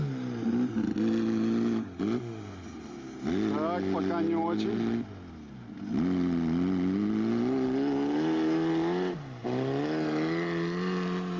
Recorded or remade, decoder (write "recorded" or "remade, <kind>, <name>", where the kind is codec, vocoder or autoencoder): recorded